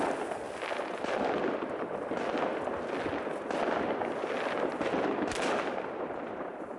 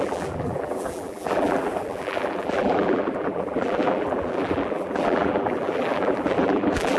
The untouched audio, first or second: first